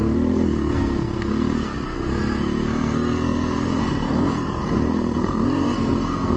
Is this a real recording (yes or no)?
no